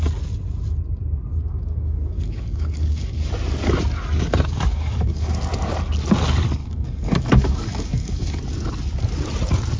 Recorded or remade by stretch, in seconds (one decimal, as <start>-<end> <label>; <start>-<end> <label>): 0.0-1.5 recorded; 1.5-3.3 remade; 3.3-4.7 recorded; 4.7-5.3 remade; 5.3-6.6 recorded; 6.6-8.4 remade; 8.4-9.8 recorded